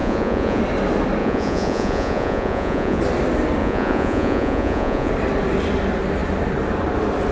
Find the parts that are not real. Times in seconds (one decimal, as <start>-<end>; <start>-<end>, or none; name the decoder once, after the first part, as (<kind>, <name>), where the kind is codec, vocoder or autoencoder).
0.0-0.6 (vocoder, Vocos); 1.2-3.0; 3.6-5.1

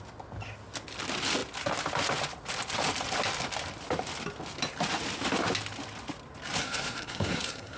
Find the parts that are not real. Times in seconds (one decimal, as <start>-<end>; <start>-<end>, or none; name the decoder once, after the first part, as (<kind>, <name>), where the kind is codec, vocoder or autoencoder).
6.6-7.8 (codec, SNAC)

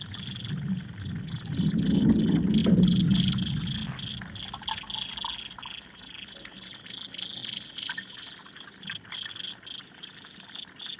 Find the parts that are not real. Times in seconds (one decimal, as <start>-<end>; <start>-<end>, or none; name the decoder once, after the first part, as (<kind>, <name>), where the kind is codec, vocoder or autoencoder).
none

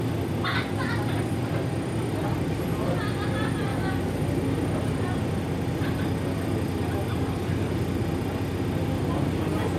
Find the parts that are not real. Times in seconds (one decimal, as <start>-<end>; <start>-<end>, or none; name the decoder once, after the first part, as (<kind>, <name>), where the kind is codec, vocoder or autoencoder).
3.7-4.2 (codec, DAC); 7.1-7.7

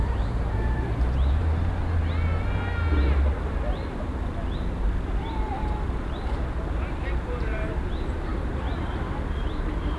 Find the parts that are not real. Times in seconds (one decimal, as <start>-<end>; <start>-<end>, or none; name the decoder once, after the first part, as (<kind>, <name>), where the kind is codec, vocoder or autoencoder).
0.0-1.4 (vocoder, BigVGAN v2); 5.5-10.0

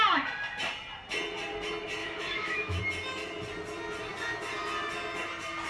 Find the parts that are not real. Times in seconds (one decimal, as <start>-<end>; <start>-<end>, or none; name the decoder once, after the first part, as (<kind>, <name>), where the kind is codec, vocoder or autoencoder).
2.0-2.8 (autoencoder, DAC-VAE)

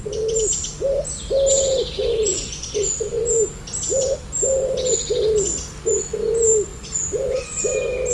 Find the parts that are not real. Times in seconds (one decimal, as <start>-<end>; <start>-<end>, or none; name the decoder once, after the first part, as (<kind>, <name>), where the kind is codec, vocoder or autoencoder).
2.0-3.2 (vocoder, Vocos); 6.7-7.6

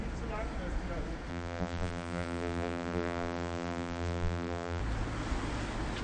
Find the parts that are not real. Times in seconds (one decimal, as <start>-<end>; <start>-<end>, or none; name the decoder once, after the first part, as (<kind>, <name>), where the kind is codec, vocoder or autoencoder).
1.3-4.8 (vocoder, BigVGAN v2)